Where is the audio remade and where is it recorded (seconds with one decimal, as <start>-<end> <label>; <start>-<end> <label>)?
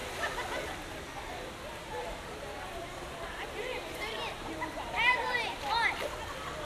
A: 0.0-2.0 recorded; 2.0-5.7 remade; 5.7-6.6 recorded